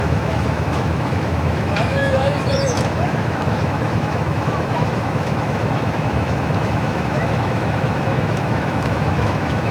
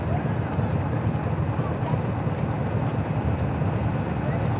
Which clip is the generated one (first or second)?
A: first